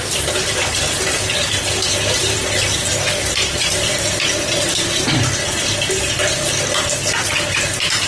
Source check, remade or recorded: remade